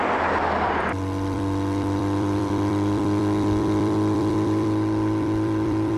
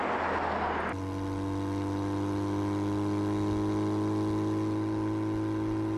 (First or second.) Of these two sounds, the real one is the second